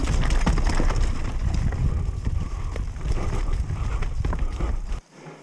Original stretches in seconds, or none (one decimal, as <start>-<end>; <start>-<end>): 0.0-5.4